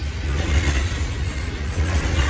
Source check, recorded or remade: remade